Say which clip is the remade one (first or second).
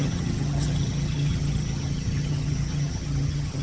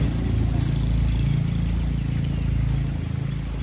first